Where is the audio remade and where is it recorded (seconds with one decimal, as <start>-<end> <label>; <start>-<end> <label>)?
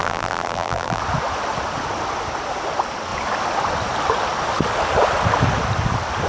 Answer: 0.0-1.0 remade; 1.0-6.3 recorded